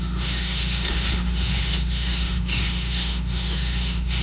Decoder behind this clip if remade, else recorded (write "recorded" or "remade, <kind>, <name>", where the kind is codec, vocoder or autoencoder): remade, autoencoder, DAC-VAE